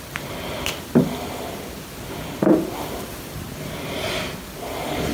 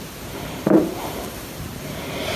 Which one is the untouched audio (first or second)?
first